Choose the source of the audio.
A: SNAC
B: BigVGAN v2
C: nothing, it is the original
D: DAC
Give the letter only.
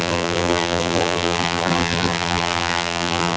B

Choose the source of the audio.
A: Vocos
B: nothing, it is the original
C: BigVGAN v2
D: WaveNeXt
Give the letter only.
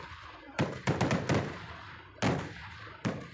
B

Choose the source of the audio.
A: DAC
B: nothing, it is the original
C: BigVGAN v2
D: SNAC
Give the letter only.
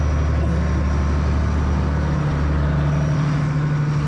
B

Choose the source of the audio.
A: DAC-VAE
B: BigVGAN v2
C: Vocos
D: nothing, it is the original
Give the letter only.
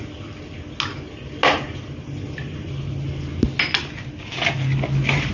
D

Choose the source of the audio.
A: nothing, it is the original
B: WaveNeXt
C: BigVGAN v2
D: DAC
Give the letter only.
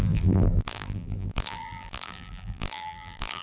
C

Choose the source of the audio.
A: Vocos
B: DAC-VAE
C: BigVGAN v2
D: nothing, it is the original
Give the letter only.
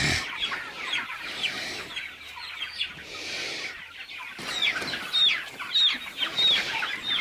D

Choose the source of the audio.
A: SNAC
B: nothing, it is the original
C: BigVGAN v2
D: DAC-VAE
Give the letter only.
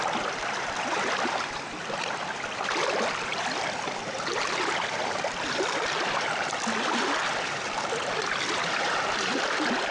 C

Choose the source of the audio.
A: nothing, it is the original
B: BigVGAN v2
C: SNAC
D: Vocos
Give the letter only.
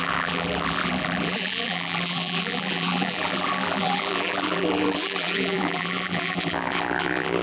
B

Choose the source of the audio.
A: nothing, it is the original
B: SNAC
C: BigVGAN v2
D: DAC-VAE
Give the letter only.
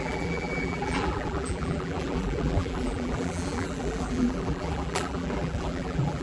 C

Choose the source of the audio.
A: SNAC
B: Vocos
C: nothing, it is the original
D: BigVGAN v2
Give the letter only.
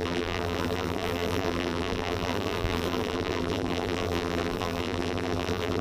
D